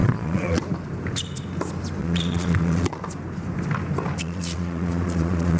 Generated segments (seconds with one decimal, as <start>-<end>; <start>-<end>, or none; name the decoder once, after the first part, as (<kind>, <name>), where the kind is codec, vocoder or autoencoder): 0.0-0.6 (vocoder, Vocos); 2.0-3.0; 4.2-5.6